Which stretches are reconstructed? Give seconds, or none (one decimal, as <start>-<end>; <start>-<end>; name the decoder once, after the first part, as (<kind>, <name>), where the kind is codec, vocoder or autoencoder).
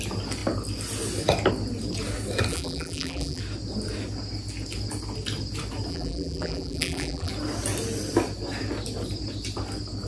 2.5-3.4 (vocoder, BigVGAN v2); 5.9-7.3